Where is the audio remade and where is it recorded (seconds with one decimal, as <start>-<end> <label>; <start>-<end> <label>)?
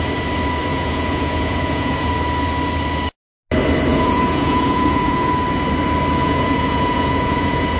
0.0-0.7 recorded; 0.7-2.1 remade; 2.1-3.9 recorded; 3.9-5.3 remade; 5.3-6.2 recorded; 6.2-7.8 remade